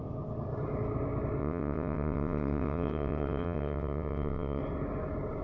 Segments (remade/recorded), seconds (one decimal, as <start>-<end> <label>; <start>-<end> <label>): 0.0-1.4 recorded; 1.4-4.6 remade; 4.6-5.4 recorded